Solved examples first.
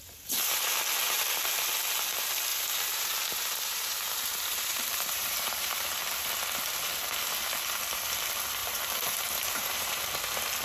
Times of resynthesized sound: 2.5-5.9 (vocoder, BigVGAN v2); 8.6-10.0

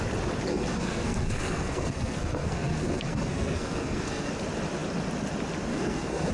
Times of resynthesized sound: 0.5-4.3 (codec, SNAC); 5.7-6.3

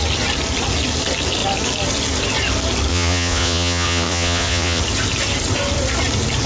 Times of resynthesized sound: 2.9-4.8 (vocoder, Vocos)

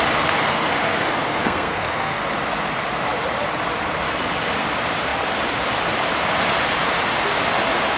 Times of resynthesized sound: 0.5-2.2 (codec, SNAC)